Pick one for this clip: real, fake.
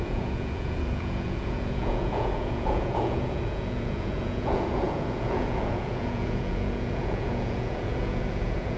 fake